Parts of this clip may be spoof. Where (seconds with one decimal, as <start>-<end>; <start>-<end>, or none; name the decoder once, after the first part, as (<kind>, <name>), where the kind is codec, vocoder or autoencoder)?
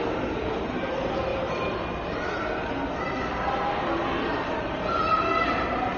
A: none